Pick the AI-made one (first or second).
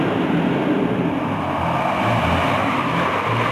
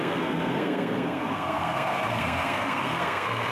second